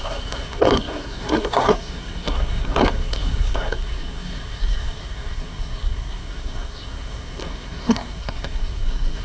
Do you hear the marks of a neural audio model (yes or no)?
yes